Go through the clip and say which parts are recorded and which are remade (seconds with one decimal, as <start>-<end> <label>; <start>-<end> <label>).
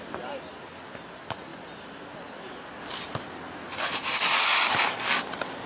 0.0-5.7 recorded